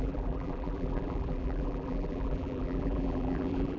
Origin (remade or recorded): remade